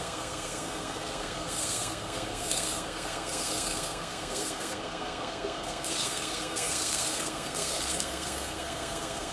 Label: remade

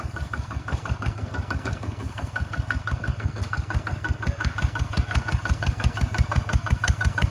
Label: remade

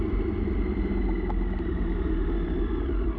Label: recorded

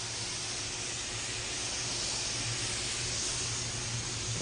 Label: recorded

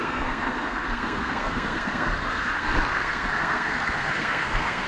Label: remade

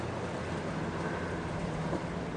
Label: recorded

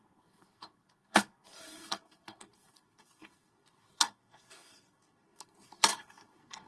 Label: remade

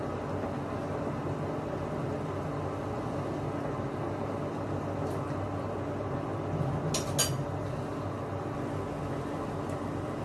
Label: recorded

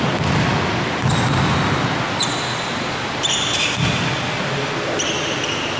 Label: recorded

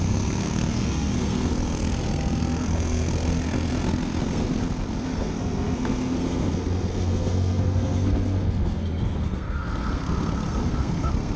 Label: remade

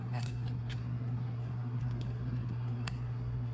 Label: remade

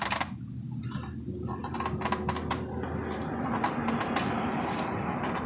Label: recorded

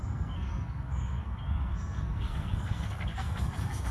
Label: remade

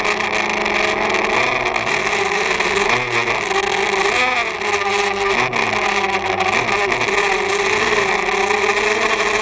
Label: recorded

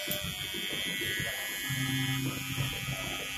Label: recorded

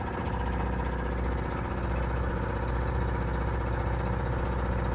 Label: recorded